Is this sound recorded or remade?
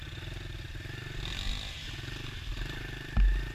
recorded